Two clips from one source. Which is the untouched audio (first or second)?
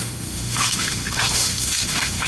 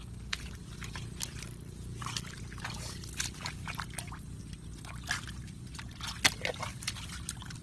second